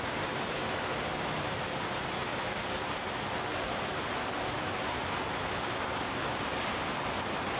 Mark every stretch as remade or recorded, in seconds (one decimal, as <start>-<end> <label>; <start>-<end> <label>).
0.0-0.6 remade; 0.6-1.4 recorded; 1.4-2.3 remade; 2.3-3.5 recorded; 3.5-5.0 remade; 5.0-6.6 recorded; 6.6-7.6 remade